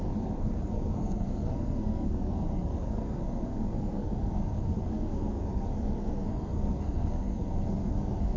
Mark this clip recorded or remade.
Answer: remade